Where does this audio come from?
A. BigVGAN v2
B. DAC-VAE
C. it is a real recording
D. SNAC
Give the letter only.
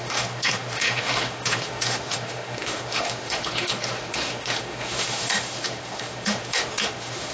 B